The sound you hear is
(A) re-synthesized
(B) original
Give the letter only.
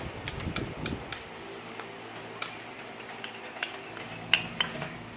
B